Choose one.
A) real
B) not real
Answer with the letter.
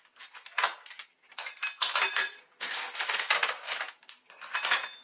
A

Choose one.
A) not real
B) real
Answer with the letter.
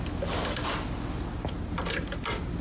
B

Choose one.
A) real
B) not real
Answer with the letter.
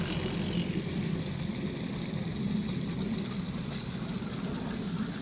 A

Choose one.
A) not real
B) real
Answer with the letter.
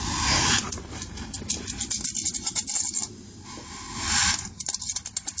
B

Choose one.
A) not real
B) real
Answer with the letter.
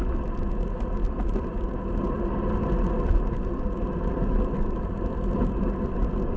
B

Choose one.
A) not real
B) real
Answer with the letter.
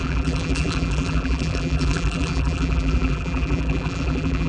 A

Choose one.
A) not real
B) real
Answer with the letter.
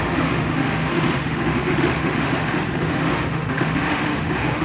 A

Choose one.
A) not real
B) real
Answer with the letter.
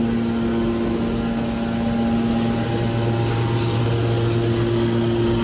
B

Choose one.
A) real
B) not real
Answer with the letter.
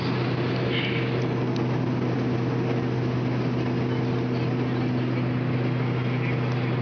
A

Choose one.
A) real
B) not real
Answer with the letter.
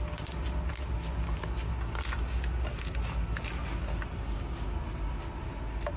A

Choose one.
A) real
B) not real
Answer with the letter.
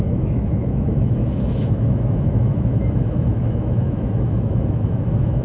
B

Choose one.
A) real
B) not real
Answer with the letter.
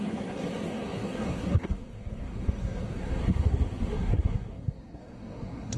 B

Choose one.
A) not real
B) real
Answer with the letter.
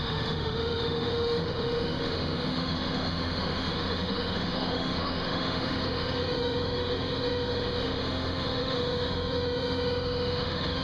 A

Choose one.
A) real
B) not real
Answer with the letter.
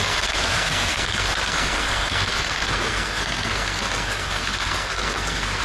B